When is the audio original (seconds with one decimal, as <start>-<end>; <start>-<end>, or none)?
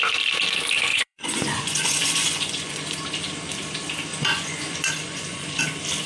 0.0-0.9; 2.8-4.1; 5.6-6.1